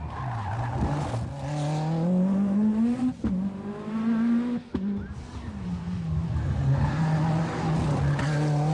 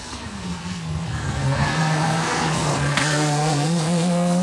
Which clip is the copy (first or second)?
second